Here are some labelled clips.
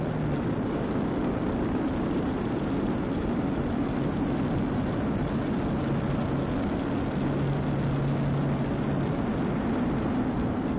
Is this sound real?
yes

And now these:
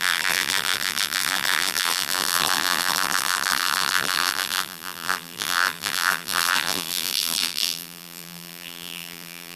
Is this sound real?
no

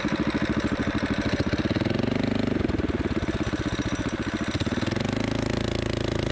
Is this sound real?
yes